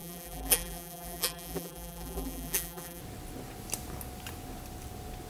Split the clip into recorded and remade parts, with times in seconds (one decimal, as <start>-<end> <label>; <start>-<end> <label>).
0.0-3.0 remade; 3.0-5.3 recorded